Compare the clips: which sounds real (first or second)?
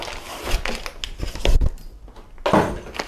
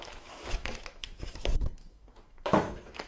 first